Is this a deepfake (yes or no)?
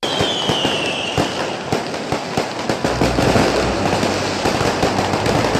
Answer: no